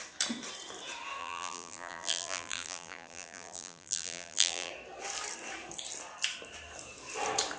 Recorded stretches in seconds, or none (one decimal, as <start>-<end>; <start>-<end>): 0.0-1.2; 4.7-7.6